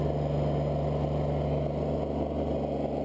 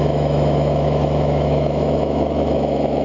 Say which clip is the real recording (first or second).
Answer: first